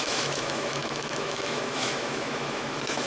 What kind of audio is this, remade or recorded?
remade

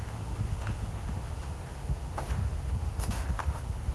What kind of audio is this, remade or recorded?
remade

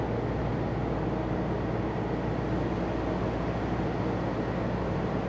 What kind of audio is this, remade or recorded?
recorded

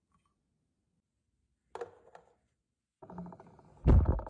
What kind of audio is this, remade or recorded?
recorded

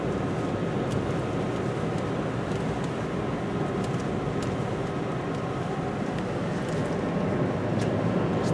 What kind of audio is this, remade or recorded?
recorded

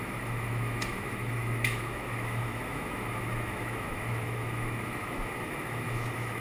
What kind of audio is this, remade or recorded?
remade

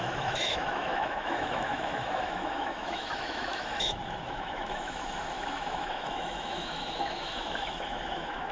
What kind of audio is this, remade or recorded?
remade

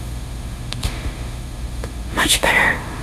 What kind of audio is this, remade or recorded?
remade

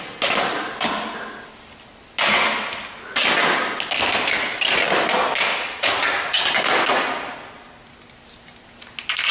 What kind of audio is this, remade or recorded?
recorded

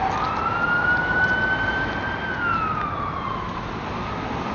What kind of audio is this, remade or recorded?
recorded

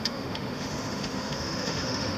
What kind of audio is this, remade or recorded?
remade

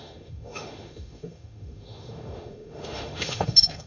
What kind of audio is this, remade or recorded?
remade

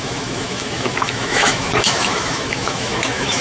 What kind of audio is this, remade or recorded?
remade